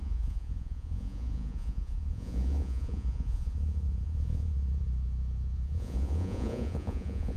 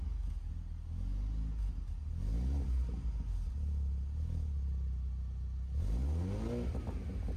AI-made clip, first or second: first